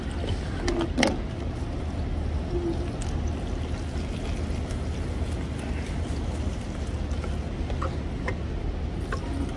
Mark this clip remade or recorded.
recorded